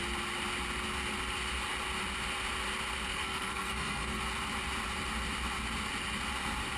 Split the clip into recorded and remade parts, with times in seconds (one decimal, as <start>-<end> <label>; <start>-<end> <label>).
0.0-3.1 recorded; 3.1-4.2 remade; 4.2-6.8 recorded

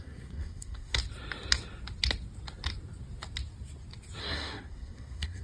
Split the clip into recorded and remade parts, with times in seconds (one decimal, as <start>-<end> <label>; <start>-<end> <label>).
0.0-1.0 remade; 1.0-4.2 recorded; 4.2-5.4 remade

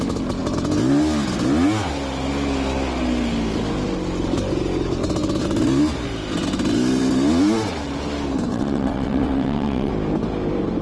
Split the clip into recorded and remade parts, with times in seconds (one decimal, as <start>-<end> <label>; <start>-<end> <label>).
0.0-8.5 recorded; 8.5-9.9 remade; 9.9-10.8 recorded

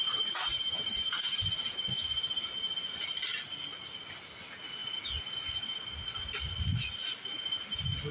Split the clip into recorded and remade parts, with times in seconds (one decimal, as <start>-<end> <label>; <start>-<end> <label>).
0.0-8.1 recorded

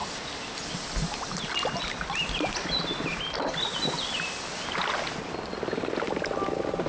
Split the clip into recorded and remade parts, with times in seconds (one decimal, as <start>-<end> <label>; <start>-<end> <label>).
0.0-6.9 recorded

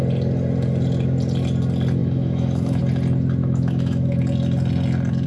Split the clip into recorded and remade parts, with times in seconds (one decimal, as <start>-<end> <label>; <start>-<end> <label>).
0.0-2.0 recorded; 2.0-2.8 remade; 2.8-3.4 recorded; 3.4-4.2 remade; 4.2-5.3 recorded

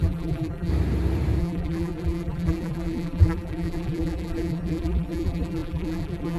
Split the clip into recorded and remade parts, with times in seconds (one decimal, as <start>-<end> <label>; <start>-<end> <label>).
0.0-0.7 remade; 0.7-1.4 recorded; 1.4-6.4 remade

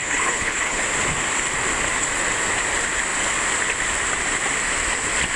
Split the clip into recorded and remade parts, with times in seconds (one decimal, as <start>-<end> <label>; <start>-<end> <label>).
0.0-0.8 remade; 0.8-5.4 recorded